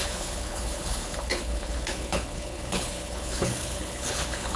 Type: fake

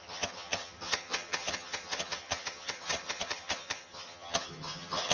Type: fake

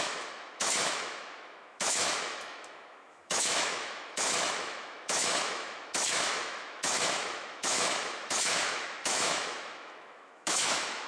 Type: fake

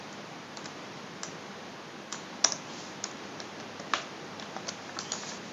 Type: real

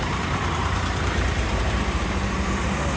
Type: fake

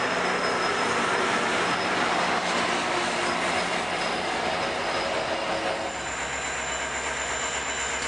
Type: real